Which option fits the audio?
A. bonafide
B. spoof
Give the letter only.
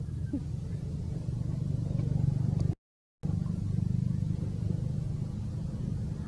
A